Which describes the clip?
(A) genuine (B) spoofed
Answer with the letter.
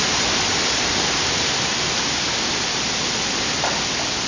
A